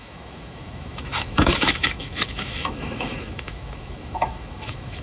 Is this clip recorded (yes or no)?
no